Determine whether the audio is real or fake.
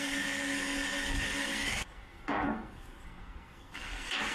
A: fake